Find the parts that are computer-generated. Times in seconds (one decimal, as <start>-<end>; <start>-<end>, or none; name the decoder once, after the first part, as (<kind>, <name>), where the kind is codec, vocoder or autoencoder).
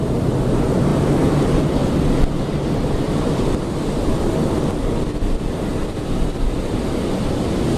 none